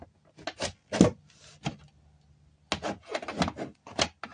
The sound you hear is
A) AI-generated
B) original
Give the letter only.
B